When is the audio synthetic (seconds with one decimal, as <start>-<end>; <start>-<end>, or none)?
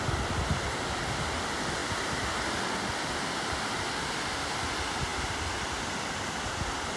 1.8-2.6; 5.1-5.6